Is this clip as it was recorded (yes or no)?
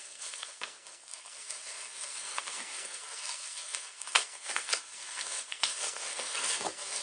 no